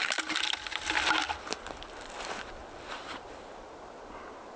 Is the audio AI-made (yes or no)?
no